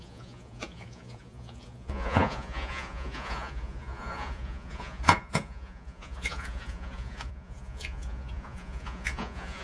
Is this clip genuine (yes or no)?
no